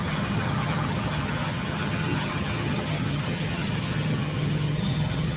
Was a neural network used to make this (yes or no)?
yes